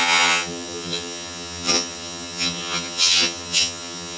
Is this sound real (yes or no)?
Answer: no